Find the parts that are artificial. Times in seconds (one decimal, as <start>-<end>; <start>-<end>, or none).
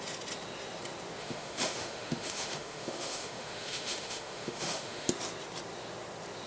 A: 1.2-5.1